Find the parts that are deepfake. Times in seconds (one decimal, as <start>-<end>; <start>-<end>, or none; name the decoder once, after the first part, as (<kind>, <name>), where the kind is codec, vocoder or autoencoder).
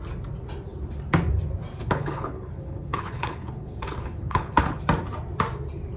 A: 1.8-4.8 (codec, HILCodec)